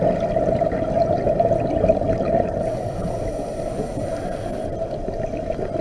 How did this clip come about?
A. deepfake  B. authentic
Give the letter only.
B